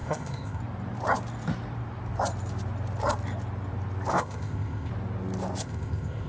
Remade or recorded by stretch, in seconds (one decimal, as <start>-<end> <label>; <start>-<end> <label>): 0.0-0.6 remade; 0.6-4.1 recorded; 4.1-4.9 remade; 4.9-5.6 recorded; 5.6-6.3 remade